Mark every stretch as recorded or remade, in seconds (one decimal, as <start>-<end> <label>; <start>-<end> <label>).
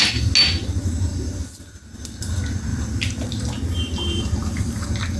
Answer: 0.0-1.1 recorded; 1.1-1.6 remade; 1.6-2.7 recorded; 2.7-4.7 remade; 4.7-5.2 recorded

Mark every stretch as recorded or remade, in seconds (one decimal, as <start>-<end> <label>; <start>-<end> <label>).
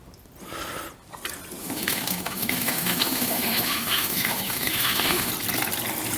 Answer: 0.0-1.6 recorded; 1.6-5.3 remade; 5.3-6.2 recorded